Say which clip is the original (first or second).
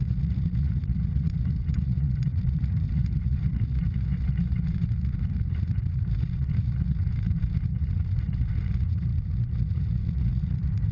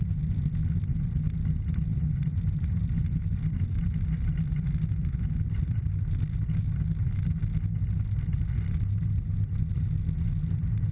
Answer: second